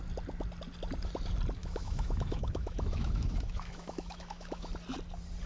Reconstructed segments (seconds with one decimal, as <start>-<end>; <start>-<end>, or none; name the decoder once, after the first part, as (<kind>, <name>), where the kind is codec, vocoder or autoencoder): 1.6-4.7 (autoencoder, DAC-VAE)